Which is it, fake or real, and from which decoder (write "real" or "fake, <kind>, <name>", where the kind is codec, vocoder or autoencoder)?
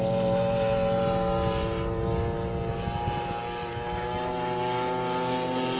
real